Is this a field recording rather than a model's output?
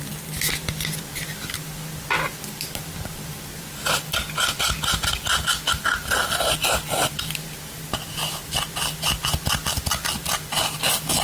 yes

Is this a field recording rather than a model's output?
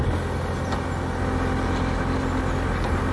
yes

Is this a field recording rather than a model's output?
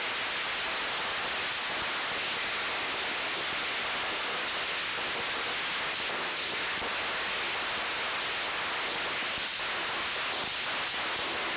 yes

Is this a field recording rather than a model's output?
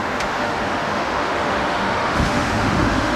no